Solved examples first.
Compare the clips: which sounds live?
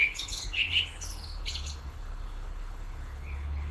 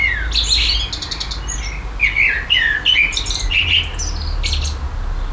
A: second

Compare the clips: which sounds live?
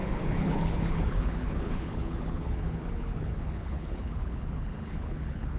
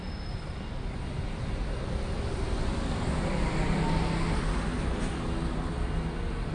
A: second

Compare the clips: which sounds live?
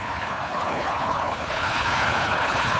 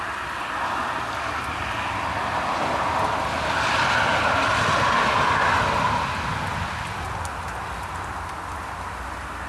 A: second